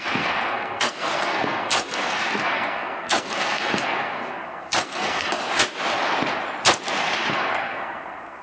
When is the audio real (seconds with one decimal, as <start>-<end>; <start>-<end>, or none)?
5.4-7.3